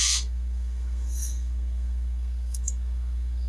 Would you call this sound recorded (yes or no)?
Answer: no